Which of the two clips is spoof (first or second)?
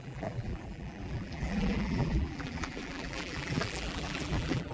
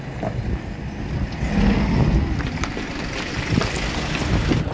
first